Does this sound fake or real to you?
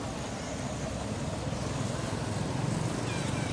real